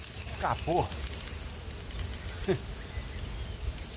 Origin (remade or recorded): recorded